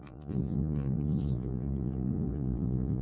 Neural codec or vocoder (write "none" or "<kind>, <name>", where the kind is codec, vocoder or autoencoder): vocoder, Vocos